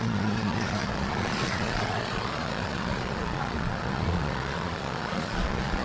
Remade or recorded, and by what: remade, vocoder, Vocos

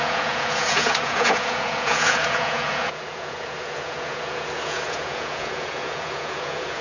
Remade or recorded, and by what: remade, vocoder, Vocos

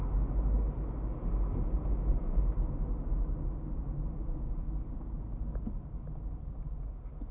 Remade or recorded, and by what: recorded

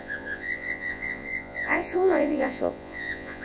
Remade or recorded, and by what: remade, vocoder, Vocos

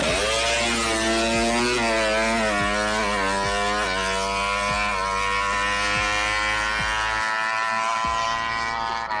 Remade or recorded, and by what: recorded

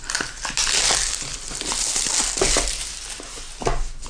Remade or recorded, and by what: recorded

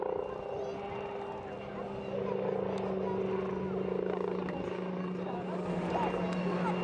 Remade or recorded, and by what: recorded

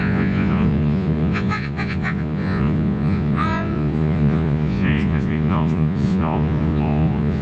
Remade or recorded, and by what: remade, vocoder, Vocos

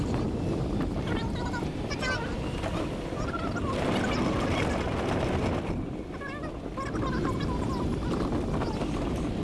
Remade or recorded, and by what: recorded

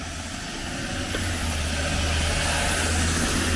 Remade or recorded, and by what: recorded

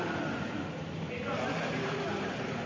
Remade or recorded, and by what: recorded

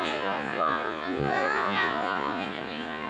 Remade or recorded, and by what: remade, vocoder, Vocos